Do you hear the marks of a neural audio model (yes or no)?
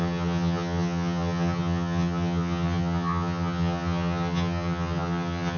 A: yes